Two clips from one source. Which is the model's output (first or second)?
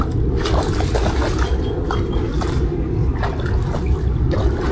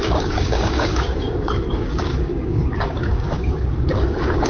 second